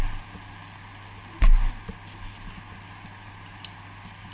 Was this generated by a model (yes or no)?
no